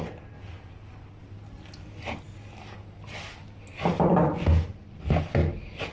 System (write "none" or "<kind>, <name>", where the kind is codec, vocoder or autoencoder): none